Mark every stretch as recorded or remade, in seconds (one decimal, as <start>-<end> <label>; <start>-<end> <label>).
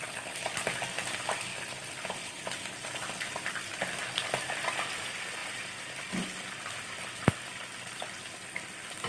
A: 0.0-9.1 recorded